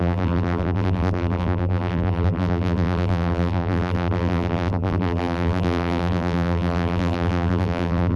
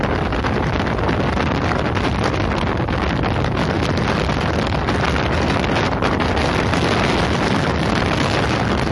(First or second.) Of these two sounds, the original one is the second